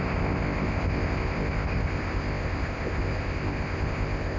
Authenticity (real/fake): fake